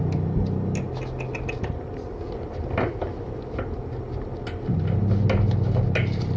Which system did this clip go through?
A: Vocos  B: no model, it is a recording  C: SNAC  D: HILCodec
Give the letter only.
B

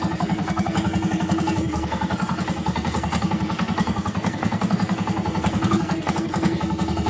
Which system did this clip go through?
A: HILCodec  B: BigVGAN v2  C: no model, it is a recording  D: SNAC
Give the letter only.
D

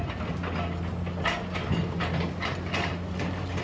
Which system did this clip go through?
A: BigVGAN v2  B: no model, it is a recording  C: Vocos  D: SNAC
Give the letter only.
B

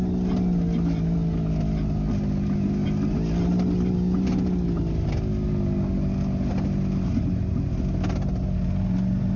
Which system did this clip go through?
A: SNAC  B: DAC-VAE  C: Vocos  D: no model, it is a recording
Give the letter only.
D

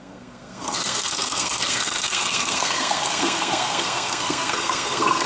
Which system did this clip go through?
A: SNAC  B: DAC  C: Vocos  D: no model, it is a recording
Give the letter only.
A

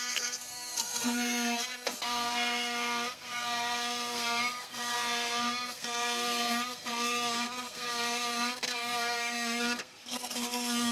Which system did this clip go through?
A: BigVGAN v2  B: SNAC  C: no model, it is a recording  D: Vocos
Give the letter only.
B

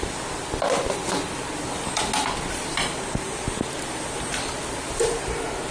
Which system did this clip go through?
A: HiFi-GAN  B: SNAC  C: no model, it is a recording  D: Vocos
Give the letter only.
C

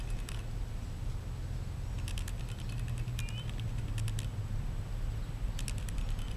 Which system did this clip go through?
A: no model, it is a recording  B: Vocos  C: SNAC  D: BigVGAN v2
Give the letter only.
A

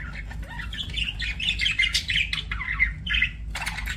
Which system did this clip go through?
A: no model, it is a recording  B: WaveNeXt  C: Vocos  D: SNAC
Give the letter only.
A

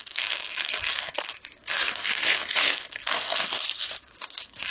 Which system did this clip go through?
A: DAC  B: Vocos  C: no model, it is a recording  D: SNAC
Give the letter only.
D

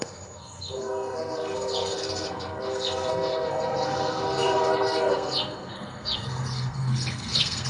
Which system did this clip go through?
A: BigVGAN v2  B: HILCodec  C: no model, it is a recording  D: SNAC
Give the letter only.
D